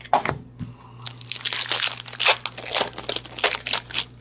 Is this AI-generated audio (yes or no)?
no